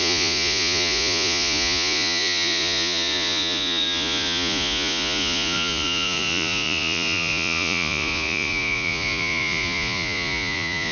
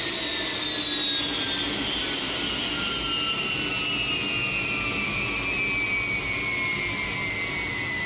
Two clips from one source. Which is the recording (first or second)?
second